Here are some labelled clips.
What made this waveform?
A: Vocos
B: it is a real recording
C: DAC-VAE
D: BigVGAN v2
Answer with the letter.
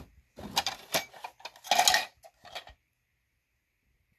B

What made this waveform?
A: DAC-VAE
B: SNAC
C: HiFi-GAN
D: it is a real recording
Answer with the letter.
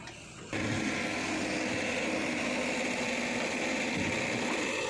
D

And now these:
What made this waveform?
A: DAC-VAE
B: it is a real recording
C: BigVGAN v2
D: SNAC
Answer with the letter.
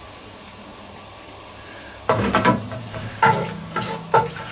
B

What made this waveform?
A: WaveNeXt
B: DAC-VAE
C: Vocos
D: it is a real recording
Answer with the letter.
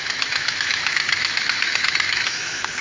B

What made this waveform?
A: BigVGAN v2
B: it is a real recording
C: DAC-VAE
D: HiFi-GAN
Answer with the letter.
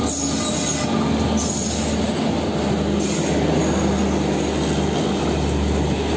B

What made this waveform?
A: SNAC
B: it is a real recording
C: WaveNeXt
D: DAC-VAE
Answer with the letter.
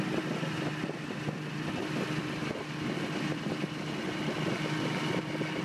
B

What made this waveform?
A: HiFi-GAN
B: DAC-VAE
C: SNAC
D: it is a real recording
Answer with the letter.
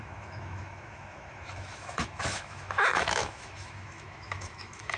B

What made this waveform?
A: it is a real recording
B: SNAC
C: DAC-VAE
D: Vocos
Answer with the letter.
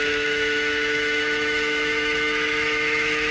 C